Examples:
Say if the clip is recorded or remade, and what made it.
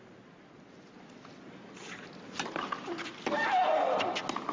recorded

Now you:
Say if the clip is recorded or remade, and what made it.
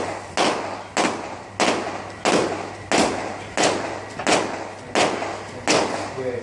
recorded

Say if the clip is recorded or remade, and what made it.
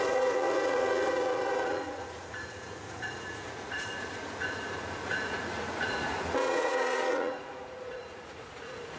remade, vocoder, Vocos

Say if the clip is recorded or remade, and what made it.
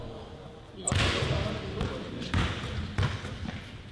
recorded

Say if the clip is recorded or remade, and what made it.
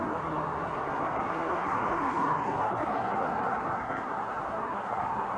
remade, codec, SNAC